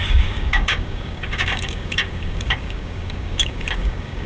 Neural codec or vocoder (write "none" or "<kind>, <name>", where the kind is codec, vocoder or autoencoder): codec, DAC